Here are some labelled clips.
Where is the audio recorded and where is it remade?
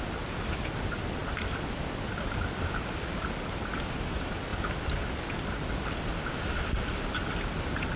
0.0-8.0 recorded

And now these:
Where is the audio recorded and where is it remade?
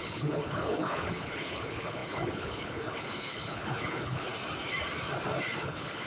0.0-4.3 remade; 4.3-5.6 recorded; 5.6-6.1 remade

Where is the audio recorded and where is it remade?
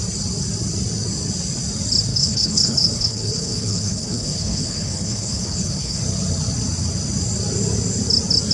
0.0-2.1 recorded; 2.1-6.0 remade; 6.0-8.5 recorded